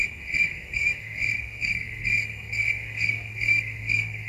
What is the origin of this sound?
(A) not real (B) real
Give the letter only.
A